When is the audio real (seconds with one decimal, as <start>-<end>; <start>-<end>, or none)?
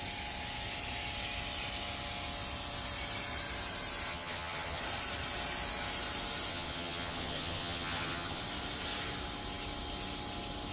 0.0-4.1; 4.8-6.5; 8.4-10.7